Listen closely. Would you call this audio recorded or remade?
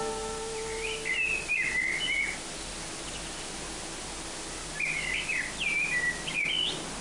recorded